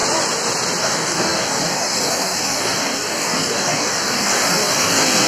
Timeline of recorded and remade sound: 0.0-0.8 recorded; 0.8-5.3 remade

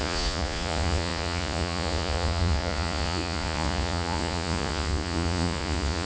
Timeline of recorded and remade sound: 0.0-6.0 remade

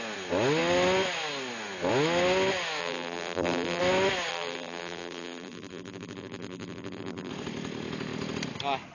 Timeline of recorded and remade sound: 0.0-2.8 recorded; 2.8-3.8 remade; 3.8-4.3 recorded; 4.3-7.3 remade; 7.3-8.9 recorded

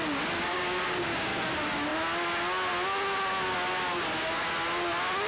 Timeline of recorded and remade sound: 0.0-0.5 recorded; 0.5-1.5 remade; 1.5-5.3 recorded

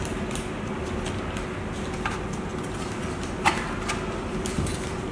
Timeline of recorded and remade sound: 0.0-5.1 recorded

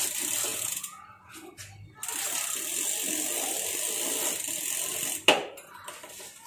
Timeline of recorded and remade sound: 0.0-0.5 recorded; 0.5-1.3 remade; 1.3-6.5 recorded

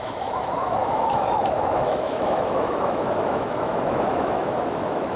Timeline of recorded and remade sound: 0.0-5.2 remade

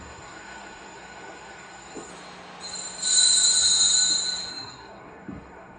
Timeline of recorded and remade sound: 0.0-2.1 remade; 2.1-4.5 recorded; 4.5-5.8 remade